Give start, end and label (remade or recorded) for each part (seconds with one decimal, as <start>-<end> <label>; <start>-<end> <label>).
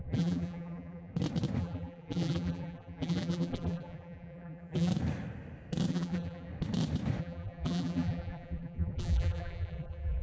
0.0-1.1 remade; 1.1-1.6 recorded; 1.6-4.9 remade; 4.9-5.9 recorded; 5.9-6.5 remade; 6.5-7.2 recorded; 7.2-10.2 remade